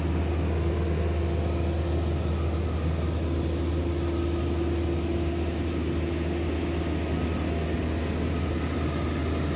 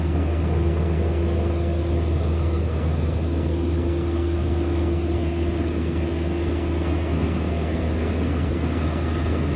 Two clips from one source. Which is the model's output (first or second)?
second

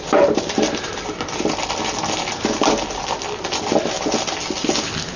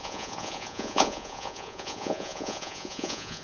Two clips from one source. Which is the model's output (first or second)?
second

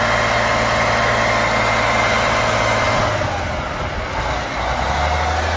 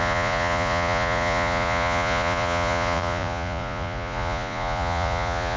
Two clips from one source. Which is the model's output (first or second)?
second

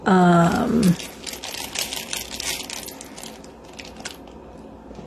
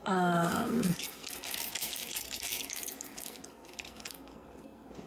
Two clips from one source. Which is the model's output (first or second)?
second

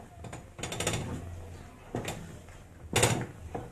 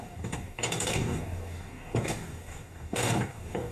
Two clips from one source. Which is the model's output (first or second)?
second